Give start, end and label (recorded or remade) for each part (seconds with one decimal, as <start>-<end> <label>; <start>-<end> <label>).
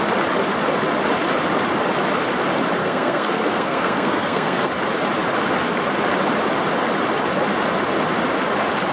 0.0-2.8 recorded; 2.8-4.7 remade; 4.7-8.9 recorded